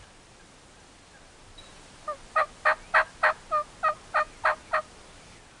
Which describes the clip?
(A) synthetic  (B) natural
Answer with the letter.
B